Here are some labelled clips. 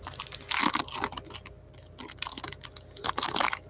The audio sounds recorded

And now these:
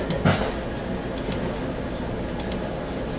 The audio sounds recorded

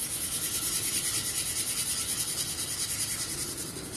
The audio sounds recorded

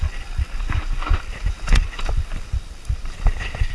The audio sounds recorded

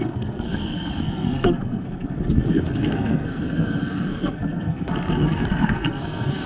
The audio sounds remade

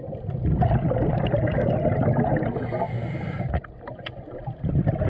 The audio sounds recorded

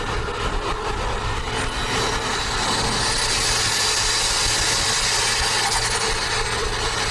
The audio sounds recorded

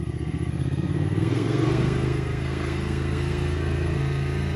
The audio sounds remade